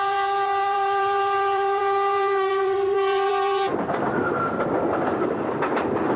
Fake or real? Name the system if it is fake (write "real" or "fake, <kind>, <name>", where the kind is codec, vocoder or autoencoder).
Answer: fake, vocoder, BigVGAN v2